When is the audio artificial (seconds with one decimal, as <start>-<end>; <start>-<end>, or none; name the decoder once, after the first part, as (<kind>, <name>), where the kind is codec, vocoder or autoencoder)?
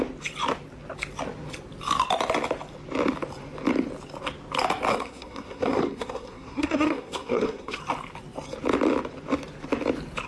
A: 4.9-7.8 (codec, SNAC)